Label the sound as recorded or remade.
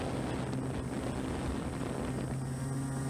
recorded